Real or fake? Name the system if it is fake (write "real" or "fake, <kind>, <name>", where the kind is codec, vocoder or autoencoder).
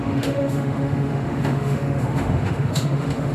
fake, autoencoder, DAC-VAE